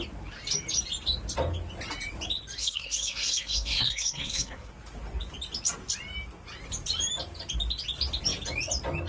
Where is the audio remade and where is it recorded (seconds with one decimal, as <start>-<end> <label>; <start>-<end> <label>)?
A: 0.0-2.6 recorded; 2.6-4.7 remade; 4.7-9.1 recorded